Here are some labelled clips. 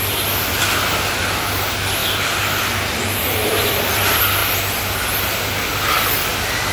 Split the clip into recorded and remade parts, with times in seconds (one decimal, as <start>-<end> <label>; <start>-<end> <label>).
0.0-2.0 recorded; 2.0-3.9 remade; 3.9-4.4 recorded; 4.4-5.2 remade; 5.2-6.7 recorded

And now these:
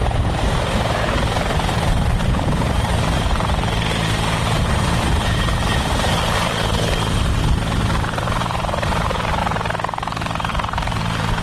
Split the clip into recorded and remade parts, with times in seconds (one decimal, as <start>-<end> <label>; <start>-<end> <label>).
0.0-9.4 remade; 9.4-10.5 recorded; 10.5-11.4 remade

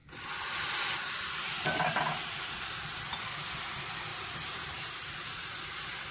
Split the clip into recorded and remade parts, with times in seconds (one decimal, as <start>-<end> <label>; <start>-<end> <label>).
0.0-4.1 recorded; 4.1-5.6 remade; 5.6-6.1 recorded

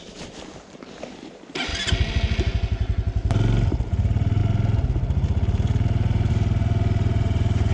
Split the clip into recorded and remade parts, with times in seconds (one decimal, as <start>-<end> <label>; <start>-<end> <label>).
0.0-1.7 remade; 1.7-3.7 recorded; 3.7-4.4 remade; 4.4-6.3 recorded; 6.3-7.7 remade